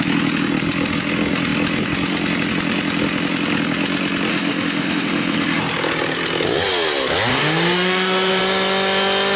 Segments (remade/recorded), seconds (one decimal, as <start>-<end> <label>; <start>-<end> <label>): 0.0-4.3 recorded; 4.3-5.6 remade; 5.6-7.3 recorded; 7.3-8.4 remade; 8.4-9.4 recorded